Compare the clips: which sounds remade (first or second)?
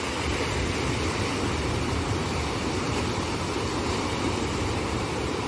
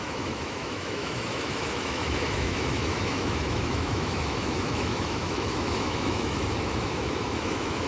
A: second